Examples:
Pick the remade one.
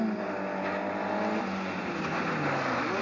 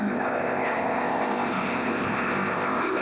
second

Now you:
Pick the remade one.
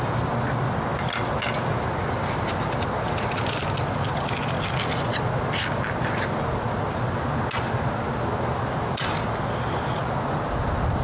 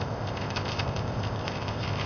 second